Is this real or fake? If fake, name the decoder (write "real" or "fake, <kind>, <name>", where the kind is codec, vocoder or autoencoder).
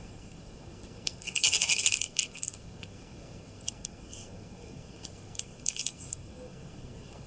fake, codec, SNAC